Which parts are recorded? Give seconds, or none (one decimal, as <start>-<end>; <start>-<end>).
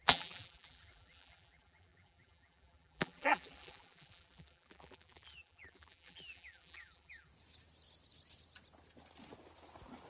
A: 7.3-10.1